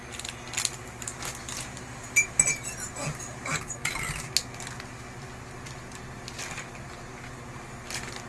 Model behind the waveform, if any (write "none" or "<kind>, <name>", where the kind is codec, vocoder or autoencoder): none